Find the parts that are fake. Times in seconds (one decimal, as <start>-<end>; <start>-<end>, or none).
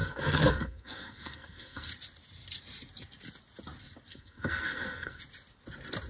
0.0-1.9; 4.1-5.2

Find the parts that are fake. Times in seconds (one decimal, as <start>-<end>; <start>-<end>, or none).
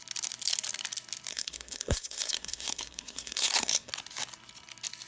1.3-3.9